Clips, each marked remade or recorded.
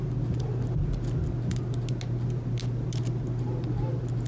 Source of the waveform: recorded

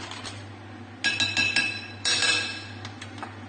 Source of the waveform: recorded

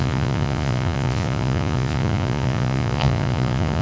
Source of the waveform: remade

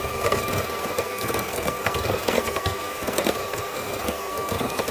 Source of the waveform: remade